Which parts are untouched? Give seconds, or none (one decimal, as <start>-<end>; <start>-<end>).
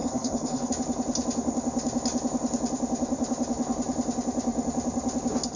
0.7-5.6